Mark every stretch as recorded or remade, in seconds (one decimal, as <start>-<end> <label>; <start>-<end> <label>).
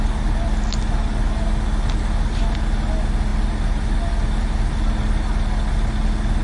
0.0-6.4 recorded